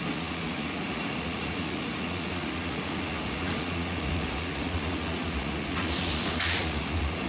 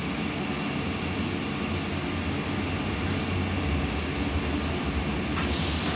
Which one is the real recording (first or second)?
second